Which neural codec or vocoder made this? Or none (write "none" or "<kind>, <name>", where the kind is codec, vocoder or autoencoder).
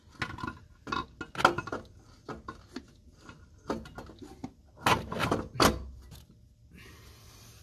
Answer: none